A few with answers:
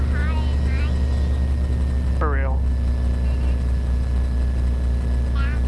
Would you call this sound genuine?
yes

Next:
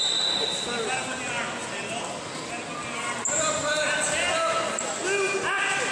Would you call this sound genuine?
yes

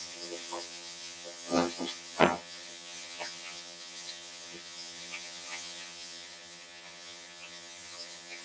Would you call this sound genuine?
no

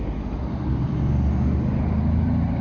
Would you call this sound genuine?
yes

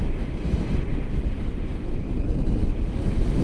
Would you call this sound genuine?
yes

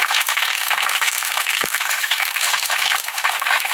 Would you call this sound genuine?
no